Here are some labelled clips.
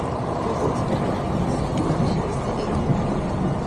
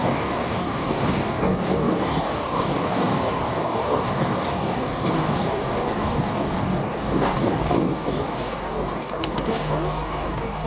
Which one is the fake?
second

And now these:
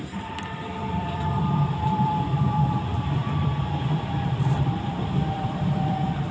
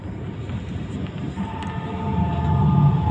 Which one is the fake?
first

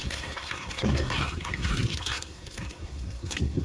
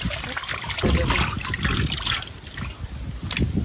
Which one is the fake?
first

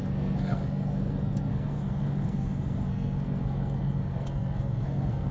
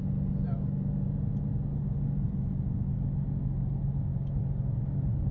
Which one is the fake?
first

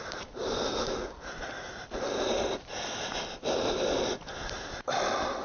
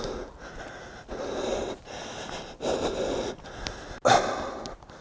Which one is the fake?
first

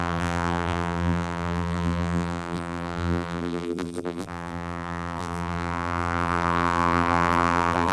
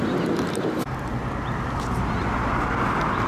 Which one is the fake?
first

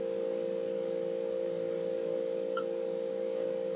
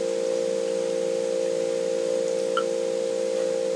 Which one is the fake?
first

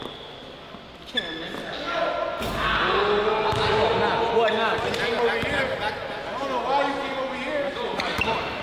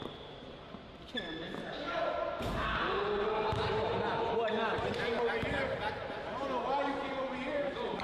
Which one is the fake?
second